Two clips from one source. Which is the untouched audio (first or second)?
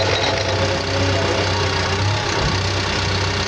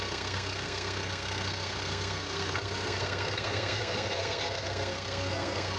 first